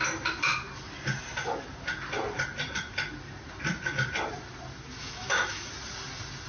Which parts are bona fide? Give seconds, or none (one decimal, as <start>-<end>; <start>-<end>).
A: 0.0-5.0; 5.7-6.5